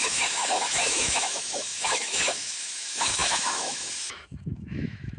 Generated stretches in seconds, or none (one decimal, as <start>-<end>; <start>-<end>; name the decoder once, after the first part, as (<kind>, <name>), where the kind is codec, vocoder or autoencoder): 0.0-5.2 (autoencoder, DAC-VAE)